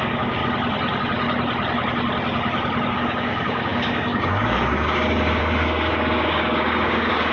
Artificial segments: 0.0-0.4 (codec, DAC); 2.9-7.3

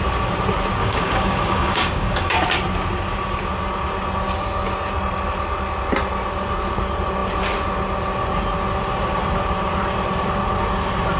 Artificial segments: 0.8-2.3 (codec, DAC)

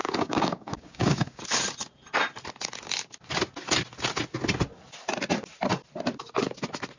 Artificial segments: 0.0-1.4 (codec, DAC)

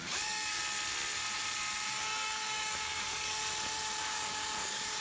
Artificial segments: 0.0-0.6 (codec, DAC); 1.9-3.4; 4.0-5.0

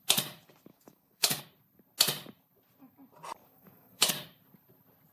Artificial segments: 0.7-1.4 (codec, DAC); 3.4-4.1

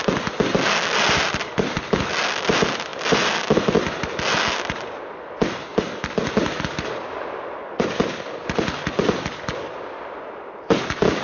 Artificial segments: none